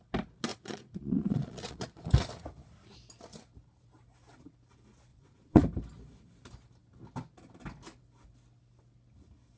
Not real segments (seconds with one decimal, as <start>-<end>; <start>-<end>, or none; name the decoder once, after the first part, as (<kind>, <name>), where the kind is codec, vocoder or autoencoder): 0.5-2.1 (vocoder, Vocos); 5.1-5.6